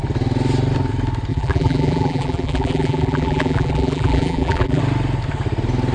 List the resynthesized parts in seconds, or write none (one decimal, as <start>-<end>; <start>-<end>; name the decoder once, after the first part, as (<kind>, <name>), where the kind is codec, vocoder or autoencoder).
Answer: 1.3-4.8 (vocoder, BigVGAN v2)